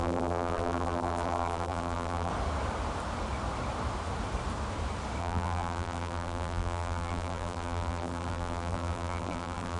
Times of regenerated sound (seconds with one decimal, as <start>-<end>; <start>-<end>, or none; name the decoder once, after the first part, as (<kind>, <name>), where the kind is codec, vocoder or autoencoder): 0.0-2.3 (vocoder, BigVGAN v2); 5.2-9.8